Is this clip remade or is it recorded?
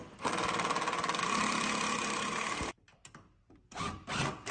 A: recorded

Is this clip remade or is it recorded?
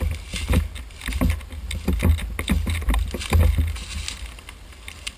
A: recorded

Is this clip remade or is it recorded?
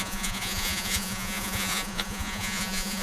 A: remade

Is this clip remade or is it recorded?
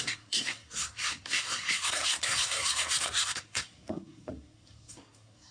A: remade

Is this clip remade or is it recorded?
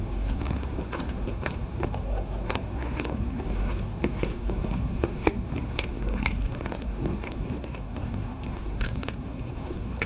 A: remade